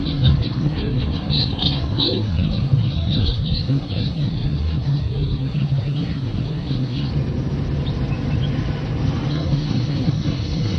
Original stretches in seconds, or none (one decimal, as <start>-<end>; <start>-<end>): 7.1-9.3